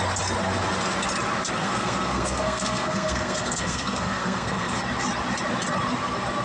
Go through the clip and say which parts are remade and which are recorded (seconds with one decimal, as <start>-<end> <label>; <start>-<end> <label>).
0.0-1.6 recorded; 1.6-4.8 remade; 4.8-6.4 recorded